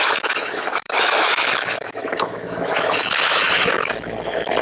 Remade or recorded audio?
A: remade